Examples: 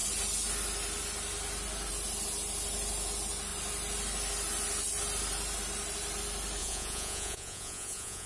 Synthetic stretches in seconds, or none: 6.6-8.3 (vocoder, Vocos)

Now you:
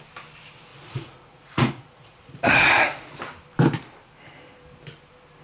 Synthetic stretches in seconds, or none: 0.7-3.2 (vocoder, Vocos)